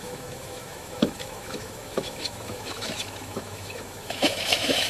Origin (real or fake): fake